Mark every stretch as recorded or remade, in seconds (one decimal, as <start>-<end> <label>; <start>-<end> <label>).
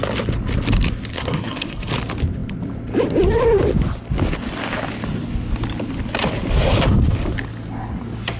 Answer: 0.0-1.1 recorded; 1.1-1.9 remade; 1.9-8.4 recorded